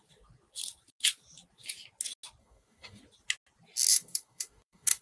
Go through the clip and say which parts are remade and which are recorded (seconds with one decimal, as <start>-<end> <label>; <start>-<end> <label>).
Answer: 0.0-2.4 recorded; 2.4-3.0 remade; 3.0-3.9 recorded; 3.9-5.0 remade